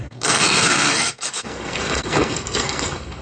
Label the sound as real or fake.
fake